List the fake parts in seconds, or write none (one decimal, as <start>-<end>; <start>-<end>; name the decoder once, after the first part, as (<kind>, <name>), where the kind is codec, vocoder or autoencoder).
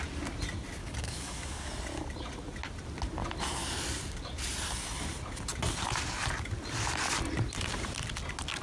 0.8-1.7 (codec, DAC)